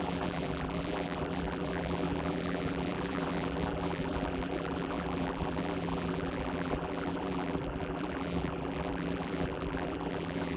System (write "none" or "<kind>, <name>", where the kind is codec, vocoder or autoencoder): vocoder, BigVGAN v2